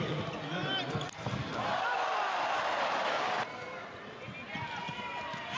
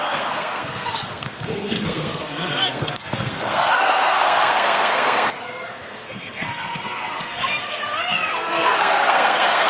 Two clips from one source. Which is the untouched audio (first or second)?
first